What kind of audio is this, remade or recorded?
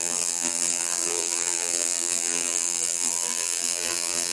remade